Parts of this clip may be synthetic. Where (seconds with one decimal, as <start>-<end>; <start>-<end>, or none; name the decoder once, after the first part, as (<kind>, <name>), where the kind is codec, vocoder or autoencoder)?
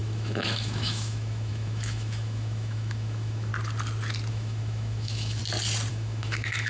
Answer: 0.0-3.5 (autoencoder, DAC-VAE); 4.3-5.4; 5.9-6.7